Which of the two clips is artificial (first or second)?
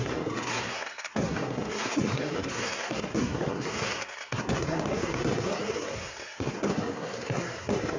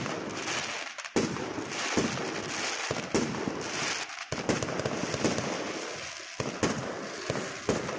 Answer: first